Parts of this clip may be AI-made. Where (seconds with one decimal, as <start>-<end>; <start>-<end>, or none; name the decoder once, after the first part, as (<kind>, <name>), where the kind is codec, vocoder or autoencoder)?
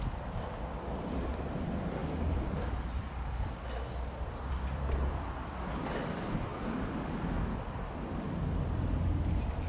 0.0-2.0 (vocoder, BigVGAN v2); 4.5-9.7